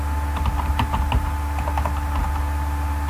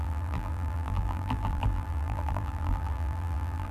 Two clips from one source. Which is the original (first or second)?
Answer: first